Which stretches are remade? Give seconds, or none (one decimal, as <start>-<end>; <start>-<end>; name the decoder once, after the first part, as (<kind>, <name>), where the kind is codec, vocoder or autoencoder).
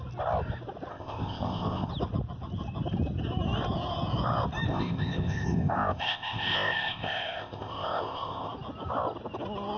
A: 0.9-1.9 (codec, ZipCodec); 4.7-8.5